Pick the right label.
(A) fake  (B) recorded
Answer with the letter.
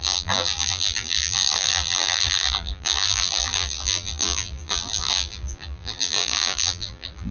A